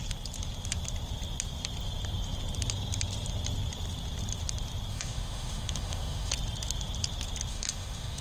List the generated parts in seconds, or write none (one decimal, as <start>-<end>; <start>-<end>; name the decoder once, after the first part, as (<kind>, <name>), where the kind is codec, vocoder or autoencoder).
4.9-6.3 (autoencoder, DAC-VAE); 7.5-8.2